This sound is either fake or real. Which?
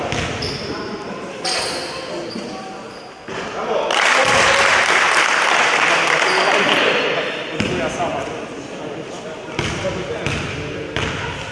real